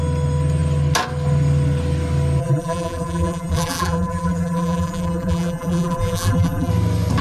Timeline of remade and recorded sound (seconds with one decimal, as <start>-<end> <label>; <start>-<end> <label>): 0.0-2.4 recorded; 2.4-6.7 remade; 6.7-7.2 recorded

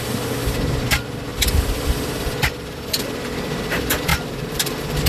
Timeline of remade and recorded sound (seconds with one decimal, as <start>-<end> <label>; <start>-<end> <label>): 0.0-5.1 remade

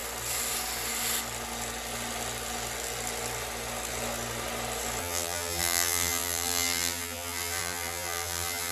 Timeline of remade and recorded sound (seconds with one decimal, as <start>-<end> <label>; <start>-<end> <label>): 0.0-5.0 recorded; 5.0-8.7 remade

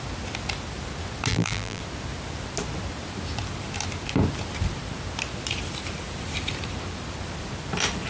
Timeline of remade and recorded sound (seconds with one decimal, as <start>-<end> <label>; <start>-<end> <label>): 0.0-1.3 recorded; 1.3-1.8 remade; 1.8-8.1 recorded